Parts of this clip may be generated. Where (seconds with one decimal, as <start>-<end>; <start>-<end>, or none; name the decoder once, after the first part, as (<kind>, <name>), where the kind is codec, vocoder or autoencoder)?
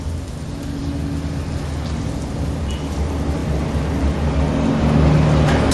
none